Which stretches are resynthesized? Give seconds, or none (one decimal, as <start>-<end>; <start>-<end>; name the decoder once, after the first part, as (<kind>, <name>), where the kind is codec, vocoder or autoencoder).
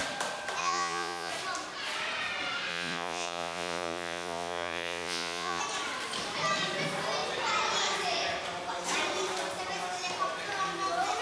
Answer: 0.6-1.3 (vocoder, Vocos); 2.7-5.6